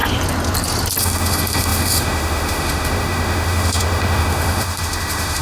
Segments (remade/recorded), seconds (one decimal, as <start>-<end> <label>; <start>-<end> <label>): 0.0-1.0 recorded; 1.0-5.4 remade